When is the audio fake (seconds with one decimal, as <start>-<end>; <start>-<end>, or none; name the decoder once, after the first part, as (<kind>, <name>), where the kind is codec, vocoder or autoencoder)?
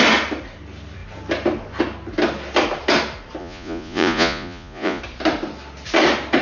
3.4-5.0 (vocoder, Vocos)